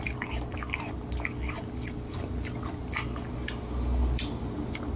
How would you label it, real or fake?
real